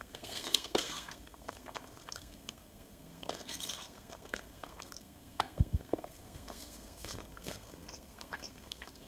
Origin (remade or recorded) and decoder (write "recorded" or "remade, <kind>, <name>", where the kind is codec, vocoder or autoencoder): remade, codec, SNAC